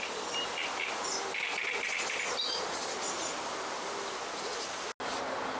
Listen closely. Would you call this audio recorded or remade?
recorded